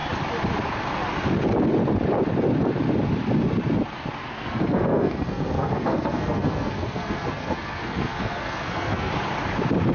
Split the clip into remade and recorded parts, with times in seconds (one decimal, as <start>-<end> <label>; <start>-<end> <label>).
0.0-4.2 recorded; 4.2-9.1 remade; 9.1-9.9 recorded